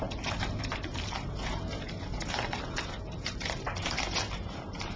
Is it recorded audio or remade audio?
remade